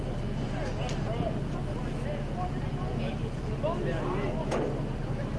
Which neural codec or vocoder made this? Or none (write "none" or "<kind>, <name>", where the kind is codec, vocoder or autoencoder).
none